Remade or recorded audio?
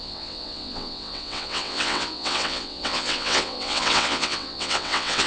remade